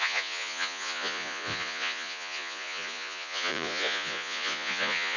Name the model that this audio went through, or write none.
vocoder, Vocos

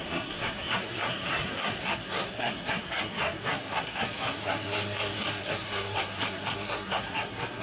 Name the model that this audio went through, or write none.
codec, SNAC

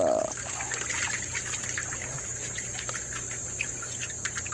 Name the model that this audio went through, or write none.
vocoder, BigVGAN v2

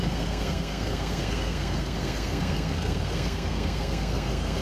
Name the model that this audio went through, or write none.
codec, SNAC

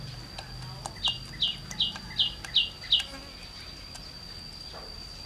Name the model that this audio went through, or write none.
none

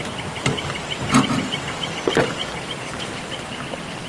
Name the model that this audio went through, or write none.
none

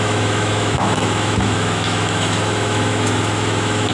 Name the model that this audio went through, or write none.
autoencoder, DAC-VAE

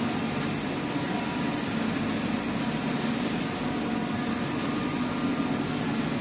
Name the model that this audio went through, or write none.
none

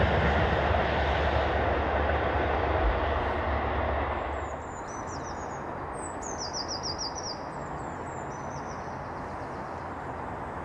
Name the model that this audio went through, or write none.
none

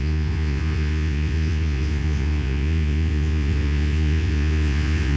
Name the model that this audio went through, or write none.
vocoder, Vocos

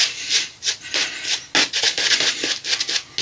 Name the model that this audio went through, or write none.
none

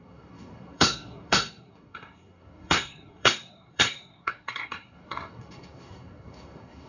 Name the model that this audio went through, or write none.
codec, SNAC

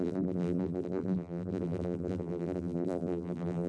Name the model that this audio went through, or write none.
vocoder, BigVGAN v2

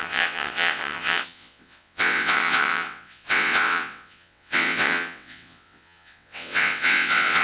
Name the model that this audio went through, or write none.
vocoder, WaveNeXt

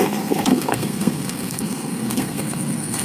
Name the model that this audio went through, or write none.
codec, SNAC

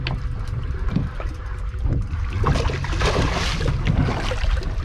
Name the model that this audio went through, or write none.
none